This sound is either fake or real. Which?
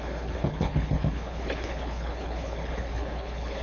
fake